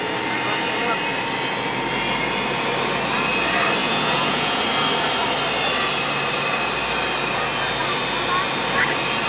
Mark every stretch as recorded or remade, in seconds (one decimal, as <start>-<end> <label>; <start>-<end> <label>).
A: 0.0-3.8 recorded; 3.8-4.6 remade; 4.6-9.3 recorded

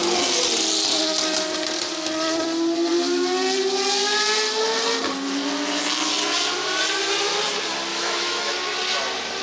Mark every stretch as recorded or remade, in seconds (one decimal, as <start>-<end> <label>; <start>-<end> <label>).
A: 0.0-7.9 recorded; 7.9-8.5 remade; 8.5-9.4 recorded